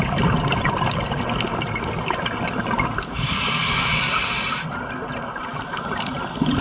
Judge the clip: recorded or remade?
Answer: recorded